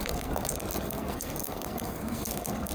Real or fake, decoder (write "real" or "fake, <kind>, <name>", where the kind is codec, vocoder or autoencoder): fake, codec, SNAC